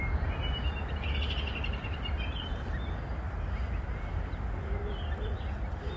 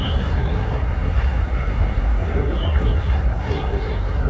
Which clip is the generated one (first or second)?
second